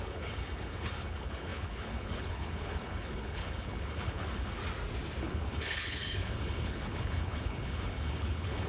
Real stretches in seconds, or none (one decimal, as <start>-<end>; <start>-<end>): 4.6-5.2